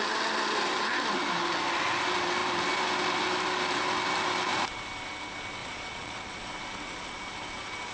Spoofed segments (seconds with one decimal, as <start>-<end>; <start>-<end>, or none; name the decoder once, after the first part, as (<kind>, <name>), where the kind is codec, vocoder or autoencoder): 5.6-6.5 (vocoder, Vocos)